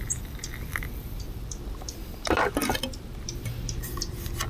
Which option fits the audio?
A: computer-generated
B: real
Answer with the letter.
B